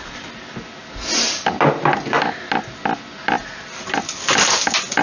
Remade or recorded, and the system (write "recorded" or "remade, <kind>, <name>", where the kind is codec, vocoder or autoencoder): recorded